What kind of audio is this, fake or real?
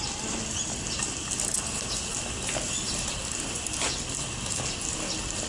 real